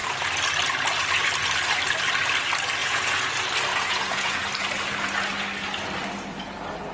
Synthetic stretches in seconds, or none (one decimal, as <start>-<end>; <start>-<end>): 2.8-3.3; 3.7-4.4